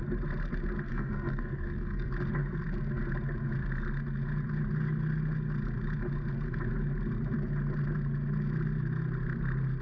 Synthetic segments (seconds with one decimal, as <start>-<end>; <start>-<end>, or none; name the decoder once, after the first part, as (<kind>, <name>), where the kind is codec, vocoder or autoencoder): 0.9-2.1 (codec, SNAC)